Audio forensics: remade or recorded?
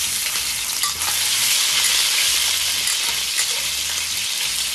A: recorded